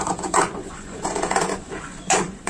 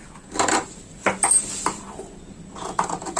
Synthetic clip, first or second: first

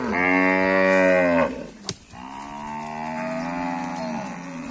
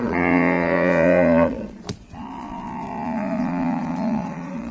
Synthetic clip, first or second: second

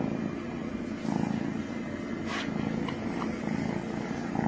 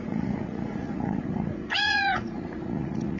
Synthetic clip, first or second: second